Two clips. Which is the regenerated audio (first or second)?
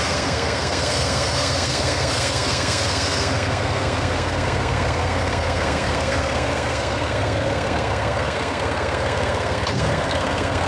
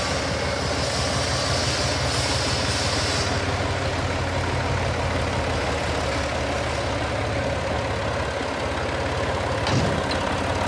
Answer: first